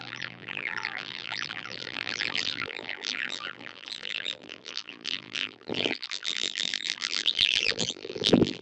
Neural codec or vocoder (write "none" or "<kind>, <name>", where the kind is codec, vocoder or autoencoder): vocoder, BigVGAN v2